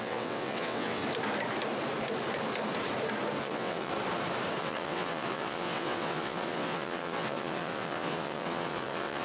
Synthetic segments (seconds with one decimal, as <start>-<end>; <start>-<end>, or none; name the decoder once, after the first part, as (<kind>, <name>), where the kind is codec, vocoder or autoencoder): 0.0-1.0 (vocoder, WaveNeXt); 3.4-3.9; 4.6-9.2